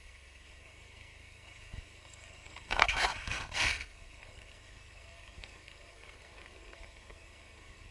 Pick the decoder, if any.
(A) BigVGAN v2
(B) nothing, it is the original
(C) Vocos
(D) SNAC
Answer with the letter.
D